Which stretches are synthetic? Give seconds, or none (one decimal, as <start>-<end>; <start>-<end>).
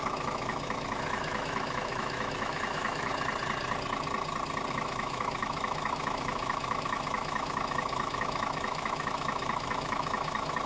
0.0-3.1; 4.7-10.7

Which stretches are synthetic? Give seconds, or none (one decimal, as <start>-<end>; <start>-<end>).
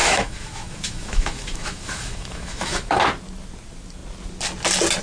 0.0-3.0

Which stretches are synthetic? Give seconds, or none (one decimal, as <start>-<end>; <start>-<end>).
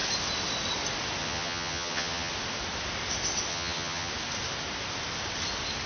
1.2-2.3; 3.5-4.1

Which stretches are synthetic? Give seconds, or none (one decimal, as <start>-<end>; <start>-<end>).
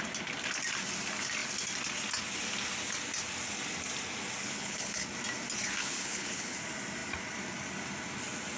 4.4-5.0; 5.8-6.6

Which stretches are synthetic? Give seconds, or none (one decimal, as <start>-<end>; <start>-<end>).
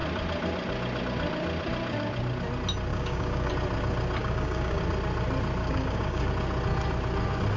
2.9-3.5; 4.2-4.8; 5.6-6.3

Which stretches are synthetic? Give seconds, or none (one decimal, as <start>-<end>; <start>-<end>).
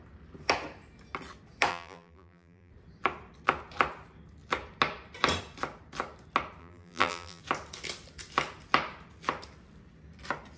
1.7-2.7; 6.6-7.4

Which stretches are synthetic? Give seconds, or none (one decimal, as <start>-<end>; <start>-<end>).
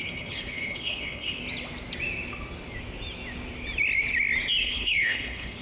0.0-1.4; 4.6-5.6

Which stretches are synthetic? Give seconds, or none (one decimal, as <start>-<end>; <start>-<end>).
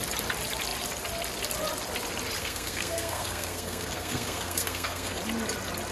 2.4-5.2